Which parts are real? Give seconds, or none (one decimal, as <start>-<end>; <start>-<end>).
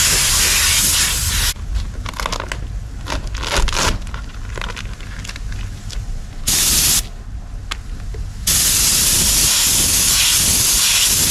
0.0-8.9; 9.5-11.3